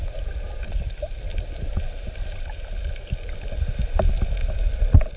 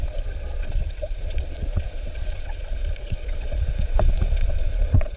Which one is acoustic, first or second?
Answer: first